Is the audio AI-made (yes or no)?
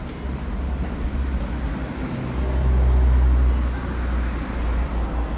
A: no